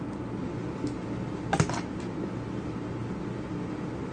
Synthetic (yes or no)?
no